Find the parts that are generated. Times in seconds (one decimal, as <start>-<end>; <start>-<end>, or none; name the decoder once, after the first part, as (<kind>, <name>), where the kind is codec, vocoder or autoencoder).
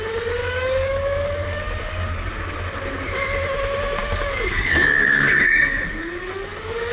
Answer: 0.4-2.3 (codec, DAC); 4.0-6.9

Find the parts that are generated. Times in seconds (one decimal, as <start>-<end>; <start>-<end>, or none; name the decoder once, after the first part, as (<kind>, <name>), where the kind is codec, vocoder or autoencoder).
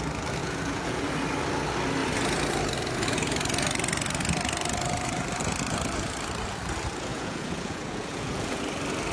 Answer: 0.4-1.1 (vocoder, Vocos); 7.1-8.6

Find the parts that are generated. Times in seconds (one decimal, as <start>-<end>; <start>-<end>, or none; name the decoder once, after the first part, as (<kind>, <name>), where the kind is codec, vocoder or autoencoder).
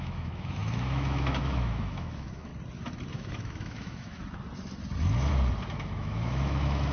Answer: 0.0-2.5 (autoencoder, DAC-VAE); 3.1-4.2; 5.7-6.9